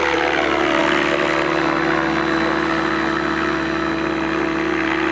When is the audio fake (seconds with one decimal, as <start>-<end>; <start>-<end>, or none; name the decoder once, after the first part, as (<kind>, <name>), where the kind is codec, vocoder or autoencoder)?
none